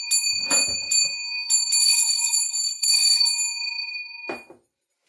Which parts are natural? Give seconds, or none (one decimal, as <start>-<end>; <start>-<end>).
0.0-1.8; 3.2-5.1